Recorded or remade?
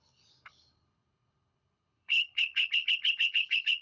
remade